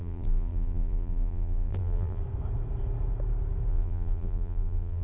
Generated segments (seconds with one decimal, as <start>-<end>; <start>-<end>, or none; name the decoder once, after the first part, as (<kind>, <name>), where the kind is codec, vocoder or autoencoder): 0.0-2.2 (vocoder, BigVGAN v2); 3.7-5.0